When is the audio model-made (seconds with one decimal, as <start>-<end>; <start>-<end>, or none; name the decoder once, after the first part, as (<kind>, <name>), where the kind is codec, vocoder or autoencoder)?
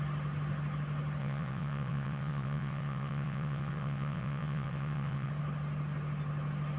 1.2-5.3 (vocoder, WaveNeXt)